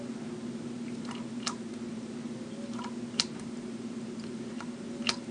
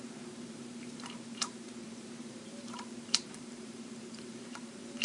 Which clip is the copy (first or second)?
second